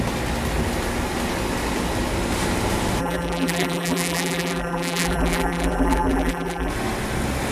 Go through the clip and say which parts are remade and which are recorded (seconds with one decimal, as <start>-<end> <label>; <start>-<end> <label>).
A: 0.0-3.0 recorded; 3.0-6.7 remade; 6.7-7.5 recorded